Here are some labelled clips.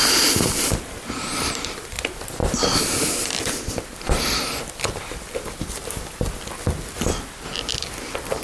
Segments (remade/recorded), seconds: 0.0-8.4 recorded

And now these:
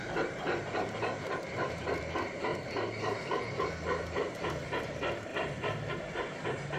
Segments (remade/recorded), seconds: 0.0-2.5 remade; 2.5-3.0 recorded; 3.0-5.3 remade; 5.3-5.9 recorded; 5.9-6.8 remade

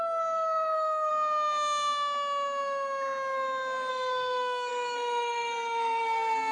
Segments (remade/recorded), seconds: 0.0-1.1 remade; 1.1-3.9 recorded; 3.9-6.5 remade